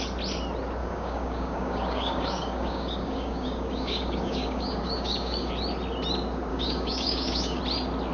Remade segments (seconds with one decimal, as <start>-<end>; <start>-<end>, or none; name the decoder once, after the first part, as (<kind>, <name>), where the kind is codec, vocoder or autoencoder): 0.8-5.5 (codec, DAC); 6.5-7.6